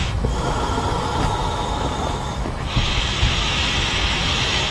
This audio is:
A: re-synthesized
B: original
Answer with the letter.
A